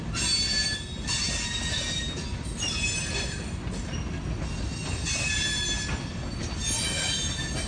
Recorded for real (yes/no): yes